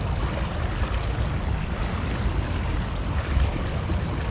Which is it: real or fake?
real